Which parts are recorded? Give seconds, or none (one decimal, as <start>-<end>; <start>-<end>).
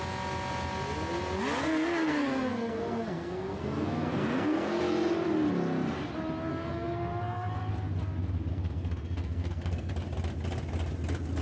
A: 0.0-1.6; 4.8-6.5; 7.7-8.5; 9.9-11.4